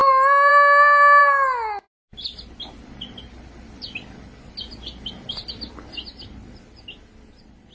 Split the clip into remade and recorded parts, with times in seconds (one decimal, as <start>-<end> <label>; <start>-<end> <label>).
0.0-7.7 recorded